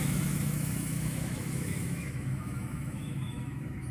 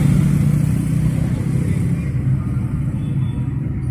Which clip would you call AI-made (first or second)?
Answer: first